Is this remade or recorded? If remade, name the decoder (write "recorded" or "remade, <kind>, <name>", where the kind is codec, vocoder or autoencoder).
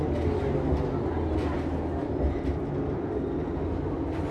recorded